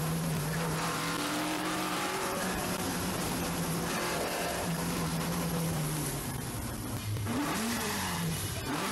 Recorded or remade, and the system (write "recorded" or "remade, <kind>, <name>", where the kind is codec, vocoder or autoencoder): remade, vocoder, BigVGAN v2